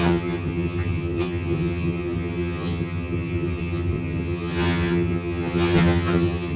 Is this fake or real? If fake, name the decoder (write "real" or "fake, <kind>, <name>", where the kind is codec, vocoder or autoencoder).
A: fake, vocoder, HiFi-GAN